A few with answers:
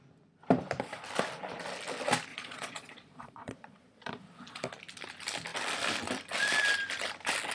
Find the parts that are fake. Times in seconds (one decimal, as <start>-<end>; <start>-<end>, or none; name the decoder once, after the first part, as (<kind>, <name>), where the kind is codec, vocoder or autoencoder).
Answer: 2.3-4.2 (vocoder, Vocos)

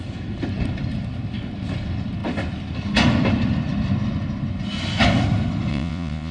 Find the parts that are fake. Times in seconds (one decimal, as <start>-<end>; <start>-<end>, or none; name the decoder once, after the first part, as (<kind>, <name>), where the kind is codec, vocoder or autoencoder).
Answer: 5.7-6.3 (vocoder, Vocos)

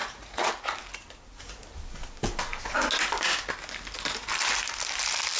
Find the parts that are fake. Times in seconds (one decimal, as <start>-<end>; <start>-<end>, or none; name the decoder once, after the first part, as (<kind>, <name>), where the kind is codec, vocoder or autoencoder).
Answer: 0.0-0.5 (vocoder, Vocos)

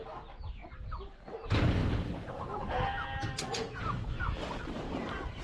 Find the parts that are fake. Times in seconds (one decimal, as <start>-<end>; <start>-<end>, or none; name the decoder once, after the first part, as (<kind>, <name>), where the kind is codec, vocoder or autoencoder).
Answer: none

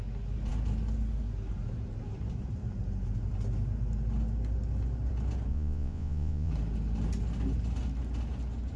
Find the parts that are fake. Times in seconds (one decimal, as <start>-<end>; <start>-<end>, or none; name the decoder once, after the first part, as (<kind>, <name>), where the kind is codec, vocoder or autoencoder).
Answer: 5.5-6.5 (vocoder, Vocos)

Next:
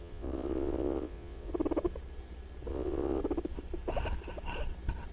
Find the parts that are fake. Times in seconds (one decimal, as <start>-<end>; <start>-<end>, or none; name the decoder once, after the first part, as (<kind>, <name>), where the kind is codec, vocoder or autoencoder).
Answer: 0.0-1.5 (vocoder, Vocos); 2.7-3.2